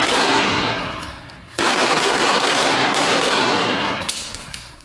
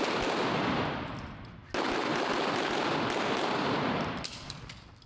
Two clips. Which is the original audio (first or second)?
second